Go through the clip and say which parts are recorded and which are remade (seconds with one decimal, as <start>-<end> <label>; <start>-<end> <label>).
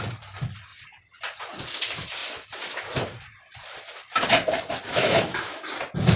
0.0-4.9 recorded; 4.9-5.6 remade; 5.6-6.2 recorded